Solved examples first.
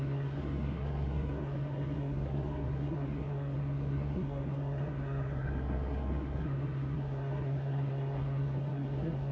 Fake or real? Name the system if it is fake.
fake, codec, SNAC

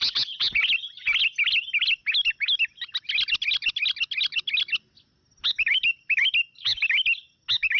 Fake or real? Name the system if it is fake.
real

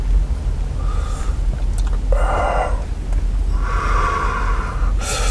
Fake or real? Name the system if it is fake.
real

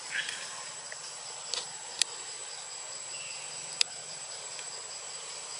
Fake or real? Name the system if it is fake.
real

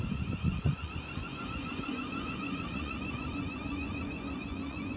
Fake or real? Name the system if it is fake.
fake, vocoder, Vocos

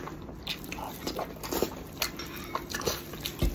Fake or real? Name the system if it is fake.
real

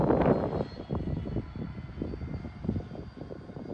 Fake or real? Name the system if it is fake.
real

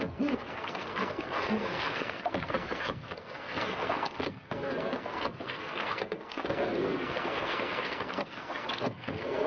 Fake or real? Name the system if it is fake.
fake, codec, SNAC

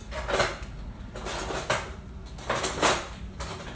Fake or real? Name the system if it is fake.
real